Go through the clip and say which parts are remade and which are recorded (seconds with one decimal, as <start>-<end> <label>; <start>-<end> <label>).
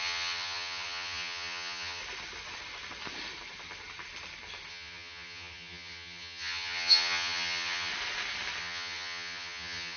0.0-2.0 remade; 2.0-4.7 recorded; 4.7-7.9 remade; 7.9-8.6 recorded; 8.6-10.0 remade